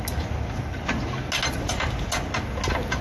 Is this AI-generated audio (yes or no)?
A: no